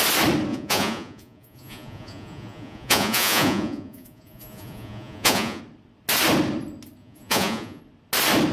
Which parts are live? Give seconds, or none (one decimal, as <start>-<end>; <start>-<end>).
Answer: 0.0-0.5; 5.6-7.0; 7.8-8.5